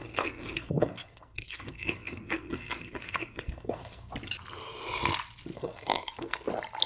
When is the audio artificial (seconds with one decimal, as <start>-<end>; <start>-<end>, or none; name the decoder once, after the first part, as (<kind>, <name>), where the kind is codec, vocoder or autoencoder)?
0.0-4.1 (codec, SNAC); 5.5-6.5